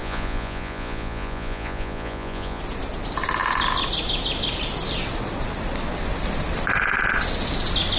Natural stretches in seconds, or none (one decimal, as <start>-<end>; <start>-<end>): 2.6-8.0